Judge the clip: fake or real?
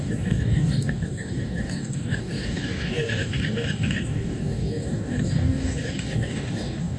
fake